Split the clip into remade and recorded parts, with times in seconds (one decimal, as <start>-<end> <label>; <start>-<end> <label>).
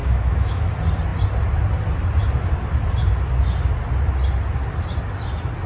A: 0.0-0.7 remade; 0.7-5.7 recorded